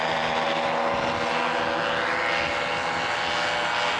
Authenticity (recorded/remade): recorded